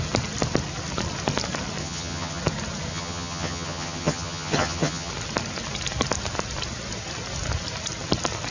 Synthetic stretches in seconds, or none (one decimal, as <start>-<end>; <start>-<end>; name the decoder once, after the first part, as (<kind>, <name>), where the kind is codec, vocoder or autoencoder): 1.8-2.4 (vocoder, HiFi-GAN); 2.9-5.1